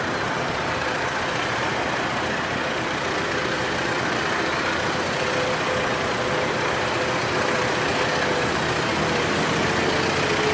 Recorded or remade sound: recorded